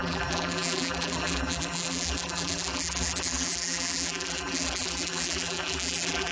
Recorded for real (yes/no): no